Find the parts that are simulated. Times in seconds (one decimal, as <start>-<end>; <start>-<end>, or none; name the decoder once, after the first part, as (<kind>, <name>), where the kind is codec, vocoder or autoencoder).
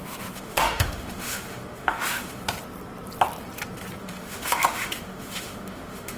0.0-2.4 (autoencoder, DAC-VAE); 4.0-6.2